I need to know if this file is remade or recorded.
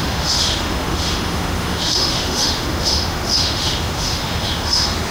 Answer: remade